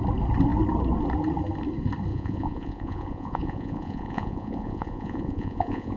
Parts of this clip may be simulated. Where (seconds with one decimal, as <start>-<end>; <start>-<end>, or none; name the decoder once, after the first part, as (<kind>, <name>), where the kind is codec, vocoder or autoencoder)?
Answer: 2.1-6.0 (vocoder, Vocos)